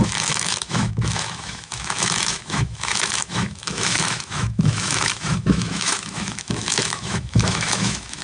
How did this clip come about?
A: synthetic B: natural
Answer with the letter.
A